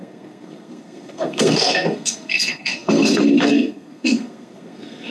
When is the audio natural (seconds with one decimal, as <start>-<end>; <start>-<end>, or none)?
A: none